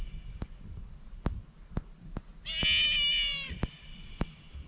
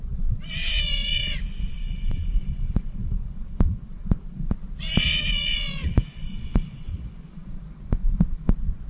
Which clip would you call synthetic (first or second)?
second